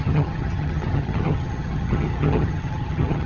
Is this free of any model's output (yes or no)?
no